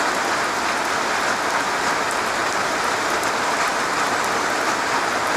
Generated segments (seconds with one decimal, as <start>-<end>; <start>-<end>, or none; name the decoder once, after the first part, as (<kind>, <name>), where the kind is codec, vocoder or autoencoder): none